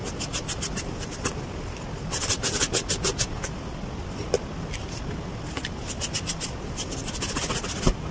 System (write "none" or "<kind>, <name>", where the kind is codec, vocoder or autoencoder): none